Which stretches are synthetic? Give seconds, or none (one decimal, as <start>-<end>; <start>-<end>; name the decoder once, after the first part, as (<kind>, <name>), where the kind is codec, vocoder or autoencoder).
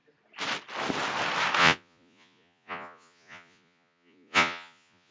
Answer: 1.6-5.1 (vocoder, Vocos)